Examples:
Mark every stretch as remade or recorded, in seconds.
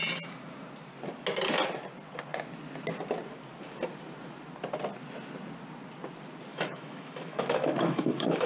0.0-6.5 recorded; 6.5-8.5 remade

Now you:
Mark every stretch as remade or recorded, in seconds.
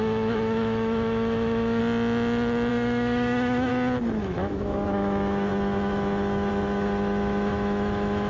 0.0-1.8 remade; 1.8-2.7 recorded; 2.7-3.7 remade; 3.7-4.2 recorded; 4.2-8.3 remade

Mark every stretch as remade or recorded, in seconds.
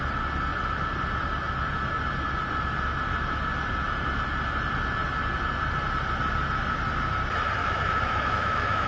0.0-7.6 recorded; 7.6-8.9 remade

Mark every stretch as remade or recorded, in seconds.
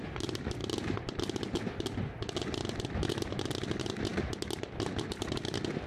0.0-5.9 recorded